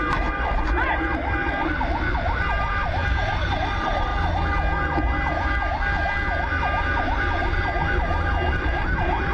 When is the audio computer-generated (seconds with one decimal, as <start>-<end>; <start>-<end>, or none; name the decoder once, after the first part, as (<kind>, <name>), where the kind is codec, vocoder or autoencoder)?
2.9-4.1 (vocoder, BigVGAN v2); 8.5-9.3